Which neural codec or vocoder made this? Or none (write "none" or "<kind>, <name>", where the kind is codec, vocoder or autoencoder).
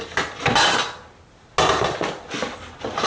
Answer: none